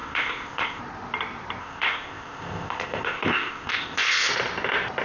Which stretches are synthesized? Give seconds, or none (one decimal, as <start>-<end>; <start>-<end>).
0.0-0.8; 1.6-4.3